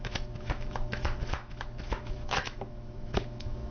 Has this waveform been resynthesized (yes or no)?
yes